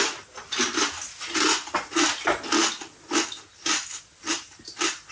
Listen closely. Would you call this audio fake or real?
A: real